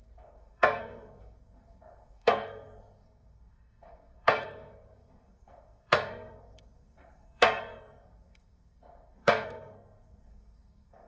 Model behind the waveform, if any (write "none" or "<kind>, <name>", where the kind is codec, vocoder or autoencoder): codec, SNAC